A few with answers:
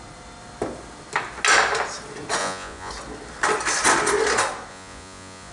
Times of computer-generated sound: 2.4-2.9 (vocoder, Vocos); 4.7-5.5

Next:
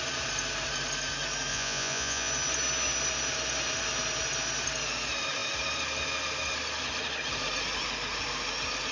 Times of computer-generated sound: 1.5-2.3 (vocoder, Vocos)

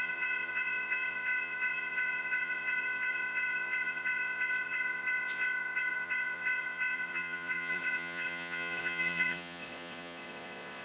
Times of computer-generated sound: 0.0-10.8 (vocoder, Vocos)